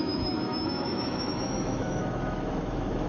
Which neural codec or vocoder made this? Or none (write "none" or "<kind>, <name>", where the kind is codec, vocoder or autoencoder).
autoencoder, DAC-VAE